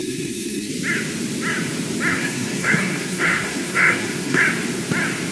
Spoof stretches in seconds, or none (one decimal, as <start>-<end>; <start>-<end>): 0.0-0.7; 2.1-4.4